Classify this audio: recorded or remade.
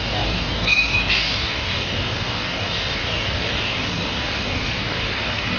remade